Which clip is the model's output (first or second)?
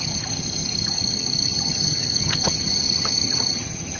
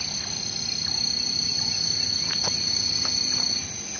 first